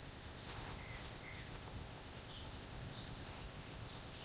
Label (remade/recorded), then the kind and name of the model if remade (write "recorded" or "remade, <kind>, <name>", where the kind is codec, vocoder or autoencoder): remade, codec, ZipCodec